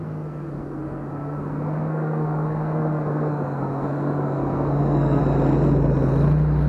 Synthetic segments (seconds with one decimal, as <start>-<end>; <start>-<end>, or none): 0.0-5.2